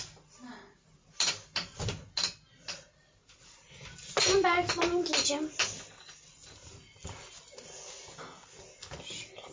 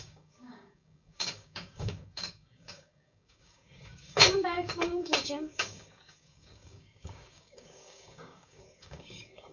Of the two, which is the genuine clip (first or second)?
first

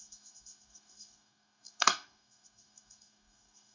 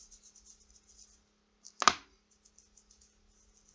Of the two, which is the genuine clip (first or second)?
second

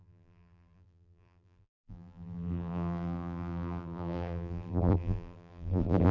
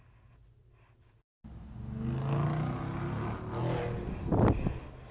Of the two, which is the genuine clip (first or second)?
second